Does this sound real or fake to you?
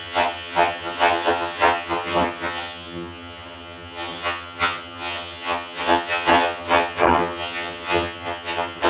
fake